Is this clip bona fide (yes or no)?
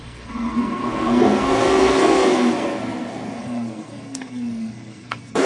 no